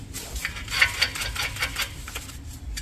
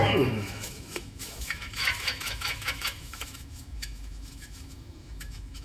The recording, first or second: first